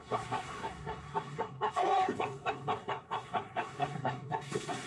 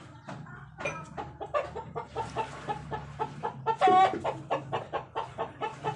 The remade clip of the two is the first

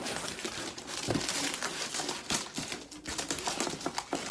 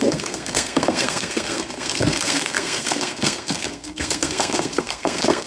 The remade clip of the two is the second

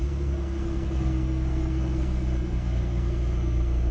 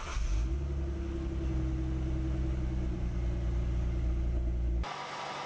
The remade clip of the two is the first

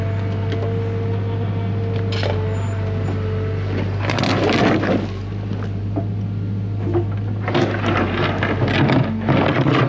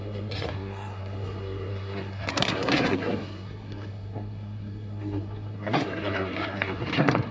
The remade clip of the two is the second